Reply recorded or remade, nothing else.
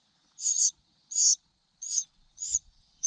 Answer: remade